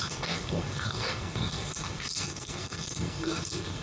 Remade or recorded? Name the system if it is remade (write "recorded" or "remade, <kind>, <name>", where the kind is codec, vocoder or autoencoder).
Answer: remade, codec, SNAC